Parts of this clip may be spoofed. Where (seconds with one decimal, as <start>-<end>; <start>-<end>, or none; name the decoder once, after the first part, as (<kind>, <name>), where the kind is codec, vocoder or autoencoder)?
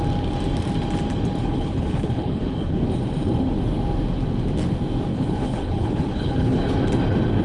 1.4-2.8 (codec, HILCodec); 5.1-6.6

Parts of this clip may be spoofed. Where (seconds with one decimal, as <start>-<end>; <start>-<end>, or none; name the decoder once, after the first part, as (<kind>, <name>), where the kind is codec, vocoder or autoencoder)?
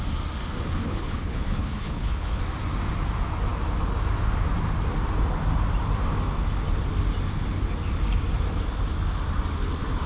0.8-2.4 (codec, HILCodec)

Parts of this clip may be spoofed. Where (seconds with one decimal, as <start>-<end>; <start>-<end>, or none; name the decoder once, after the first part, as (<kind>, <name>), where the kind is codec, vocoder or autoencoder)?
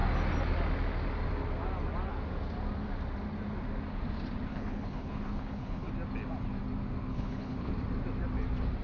4.5-5.9 (codec, HILCodec); 7.1-7.7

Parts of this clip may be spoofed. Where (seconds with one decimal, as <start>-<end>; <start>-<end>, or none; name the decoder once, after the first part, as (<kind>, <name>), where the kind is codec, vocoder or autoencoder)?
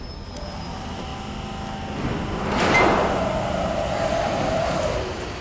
none